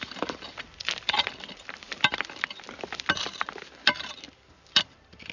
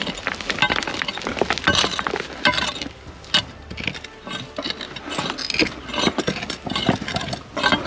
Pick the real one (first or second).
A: second